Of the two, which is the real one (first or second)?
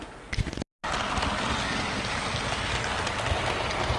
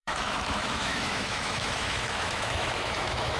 first